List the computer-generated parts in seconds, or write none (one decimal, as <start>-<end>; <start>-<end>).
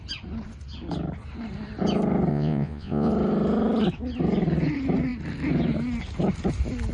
2.3-3.1